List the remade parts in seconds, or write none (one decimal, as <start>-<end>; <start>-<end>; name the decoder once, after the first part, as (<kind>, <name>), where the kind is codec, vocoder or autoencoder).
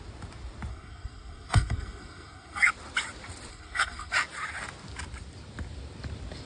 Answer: 0.7-2.7 (codec, SNAC); 3.5-4.1